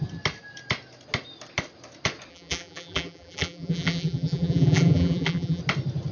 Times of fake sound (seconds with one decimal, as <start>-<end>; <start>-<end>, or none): 2.3-5.6